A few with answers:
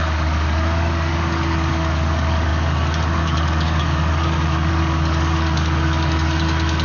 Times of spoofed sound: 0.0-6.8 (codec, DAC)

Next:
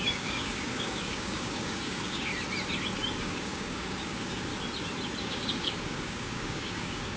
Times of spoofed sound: 0.0-2.3 (codec, DAC); 3.2-4.5; 5.2-7.2

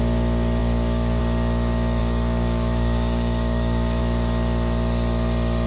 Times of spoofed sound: 0.6-1.2 (codec, DAC); 2.0-4.0

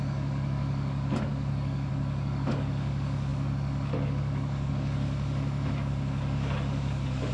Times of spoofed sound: 0.0-7.3 (codec, DAC)

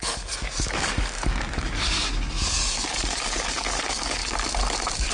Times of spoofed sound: 0.0-4.2 (codec, DAC)